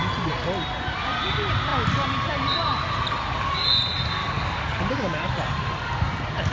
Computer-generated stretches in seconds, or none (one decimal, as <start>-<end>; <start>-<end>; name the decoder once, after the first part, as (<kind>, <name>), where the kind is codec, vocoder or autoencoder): 4.2-5.3 (codec, DAC)